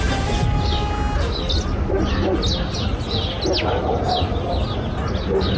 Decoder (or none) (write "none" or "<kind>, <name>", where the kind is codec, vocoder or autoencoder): none